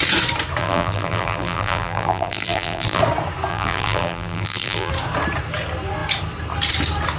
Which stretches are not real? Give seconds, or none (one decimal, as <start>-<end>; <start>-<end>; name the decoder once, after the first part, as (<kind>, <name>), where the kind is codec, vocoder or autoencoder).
0.6-3.0 (vocoder, BigVGAN v2); 3.5-4.9